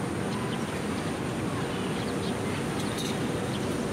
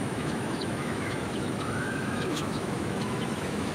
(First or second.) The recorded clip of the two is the first